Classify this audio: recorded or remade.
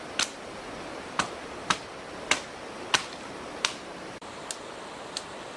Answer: recorded